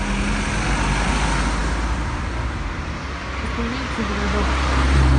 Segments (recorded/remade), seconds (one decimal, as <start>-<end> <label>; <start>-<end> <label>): 0.0-1.6 recorded; 1.6-4.1 remade; 4.1-5.2 recorded